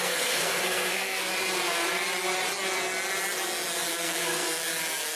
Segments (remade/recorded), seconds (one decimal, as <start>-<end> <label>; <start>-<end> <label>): 0.0-1.3 remade; 1.3-3.9 recorded; 3.9-4.6 remade; 4.6-5.2 recorded